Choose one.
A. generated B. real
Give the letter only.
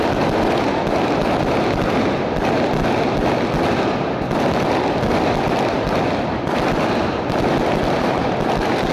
B